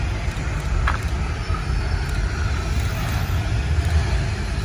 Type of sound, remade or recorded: recorded